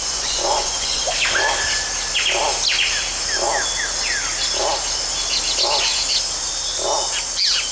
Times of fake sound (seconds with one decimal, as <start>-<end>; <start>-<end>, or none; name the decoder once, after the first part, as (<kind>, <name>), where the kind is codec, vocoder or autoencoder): 0.0-1.0 (vocoder, Vocos)